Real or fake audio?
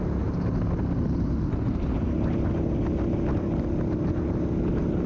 real